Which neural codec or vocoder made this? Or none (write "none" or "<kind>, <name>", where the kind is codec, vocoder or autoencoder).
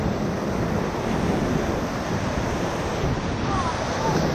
none